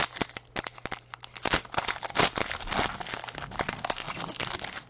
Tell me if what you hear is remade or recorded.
recorded